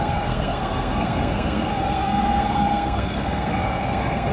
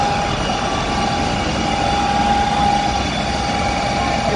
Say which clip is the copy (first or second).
first